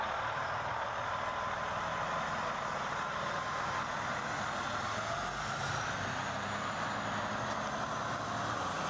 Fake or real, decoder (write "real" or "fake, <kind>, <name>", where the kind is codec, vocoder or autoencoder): real